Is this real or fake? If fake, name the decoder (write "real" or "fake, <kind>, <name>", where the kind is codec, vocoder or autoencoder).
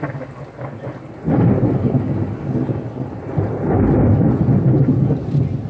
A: real